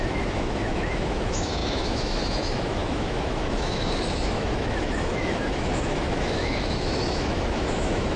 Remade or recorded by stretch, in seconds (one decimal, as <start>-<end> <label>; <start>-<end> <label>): 0.0-8.2 remade